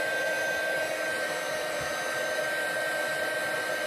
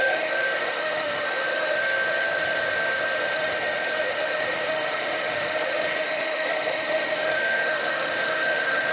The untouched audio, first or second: first